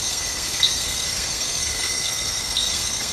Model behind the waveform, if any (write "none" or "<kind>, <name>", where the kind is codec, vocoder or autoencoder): codec, SNAC